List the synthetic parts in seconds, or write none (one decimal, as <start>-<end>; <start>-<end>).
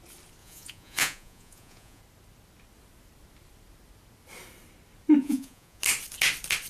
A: 0.4-2.0; 5.2-5.8